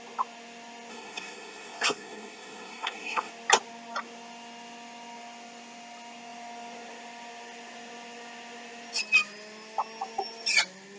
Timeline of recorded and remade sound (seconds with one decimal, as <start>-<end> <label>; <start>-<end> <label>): 0.0-0.9 recorded; 0.9-3.3 remade; 3.3-11.0 recorded